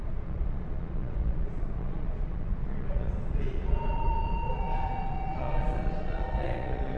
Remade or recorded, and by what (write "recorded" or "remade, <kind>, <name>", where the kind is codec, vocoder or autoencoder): remade, vocoder, Vocos